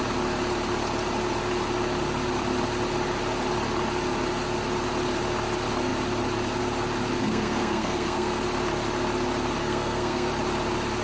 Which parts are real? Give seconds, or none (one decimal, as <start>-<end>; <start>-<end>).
0.0-7.2; 8.4-9.6; 10.3-11.0